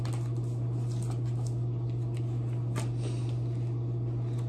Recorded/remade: recorded